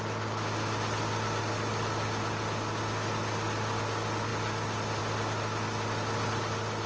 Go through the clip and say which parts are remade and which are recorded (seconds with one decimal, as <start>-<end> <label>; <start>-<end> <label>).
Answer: 0.0-6.9 recorded